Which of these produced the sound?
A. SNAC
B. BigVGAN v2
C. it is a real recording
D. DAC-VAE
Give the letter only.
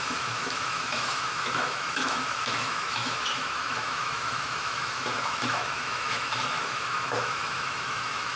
D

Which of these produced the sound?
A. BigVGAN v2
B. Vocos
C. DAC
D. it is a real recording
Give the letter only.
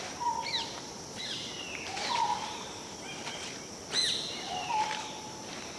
A